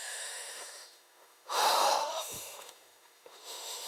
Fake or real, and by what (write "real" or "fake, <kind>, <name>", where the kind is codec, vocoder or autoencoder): fake, autoencoder, DAC-VAE